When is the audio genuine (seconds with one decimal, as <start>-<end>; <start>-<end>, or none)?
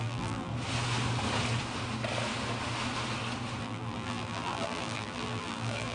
0.5-3.6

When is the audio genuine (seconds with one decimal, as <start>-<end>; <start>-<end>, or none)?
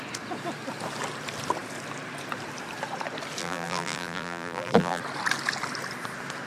0.0-3.4; 5.0-6.5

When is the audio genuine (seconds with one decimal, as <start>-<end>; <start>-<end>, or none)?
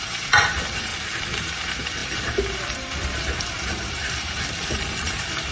0.9-1.4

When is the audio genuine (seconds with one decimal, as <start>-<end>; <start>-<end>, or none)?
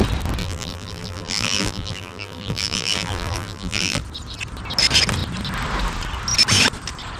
0.0-0.4; 4.0-7.2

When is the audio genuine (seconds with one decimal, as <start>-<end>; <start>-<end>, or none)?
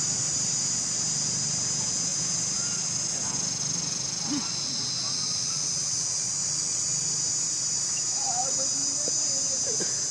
0.0-10.1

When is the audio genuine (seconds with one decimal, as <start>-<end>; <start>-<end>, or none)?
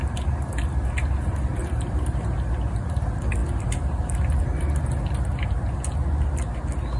0.0-1.6; 2.5-7.0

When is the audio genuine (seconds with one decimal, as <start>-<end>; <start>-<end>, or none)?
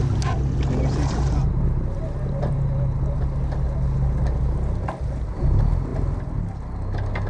0.0-1.4; 2.0-7.3